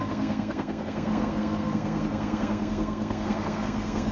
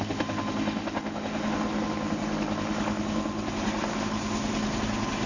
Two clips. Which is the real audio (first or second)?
second